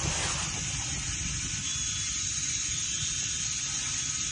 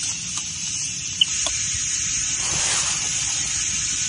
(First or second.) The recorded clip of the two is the first